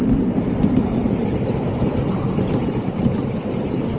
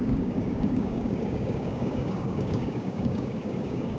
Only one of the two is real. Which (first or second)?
first